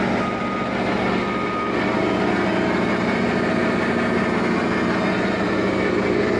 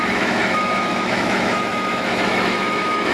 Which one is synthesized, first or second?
second